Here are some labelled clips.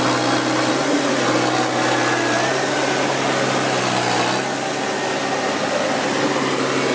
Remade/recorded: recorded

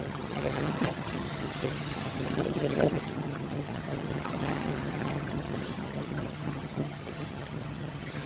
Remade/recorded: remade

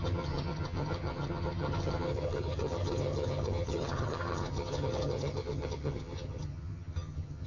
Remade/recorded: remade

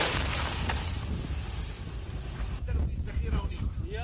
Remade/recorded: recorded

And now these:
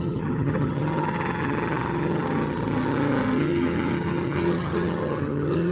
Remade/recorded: remade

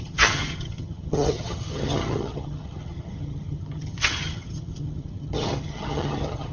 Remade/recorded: remade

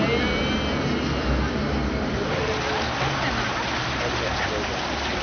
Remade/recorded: recorded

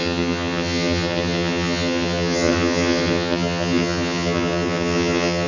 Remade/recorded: remade